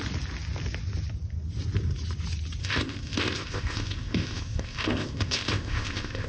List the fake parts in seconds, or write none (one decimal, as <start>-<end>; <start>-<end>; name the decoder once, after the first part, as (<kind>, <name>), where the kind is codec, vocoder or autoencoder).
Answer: 2.6-6.3 (codec, ZipCodec)